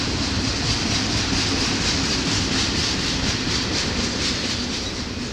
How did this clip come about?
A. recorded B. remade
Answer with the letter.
A